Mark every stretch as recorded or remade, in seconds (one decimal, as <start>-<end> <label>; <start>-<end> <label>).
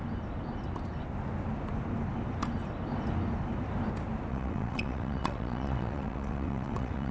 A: 0.0-4.3 recorded; 4.3-7.1 remade